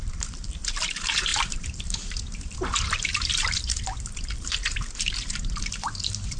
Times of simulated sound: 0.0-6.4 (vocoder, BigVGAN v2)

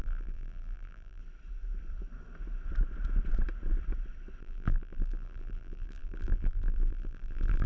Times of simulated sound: 0.0-1.2 (vocoder, BigVGAN v2); 4.4-7.7

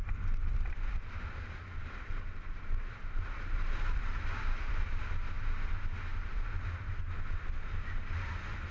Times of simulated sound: 0.5-5.0 (vocoder, BigVGAN v2); 6.1-7.0

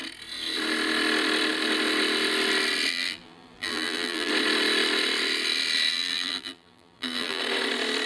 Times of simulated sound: 2.9-4.3 (vocoder, BigVGAN v2); 5.9-7.4

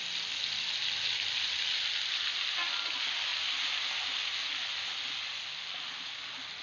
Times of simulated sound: none

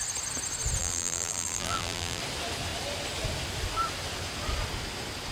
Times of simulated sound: 0.8-2.2 (vocoder, BigVGAN v2)

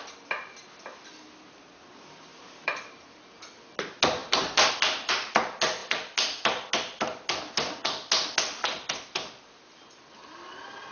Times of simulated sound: 2.3-3.4 (vocoder, BigVGAN v2); 4.2-4.7

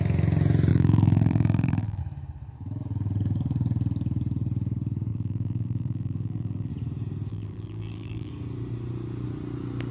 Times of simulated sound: 0.7-2.0 (vocoder, BigVGAN v2); 5.1-6.7; 7.3-8.3